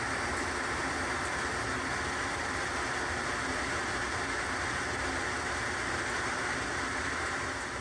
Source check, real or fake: real